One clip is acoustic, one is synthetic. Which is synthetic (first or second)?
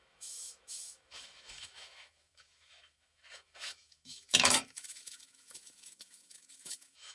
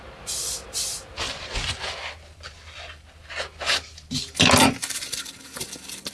first